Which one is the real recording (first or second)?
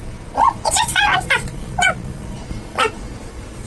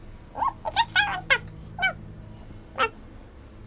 second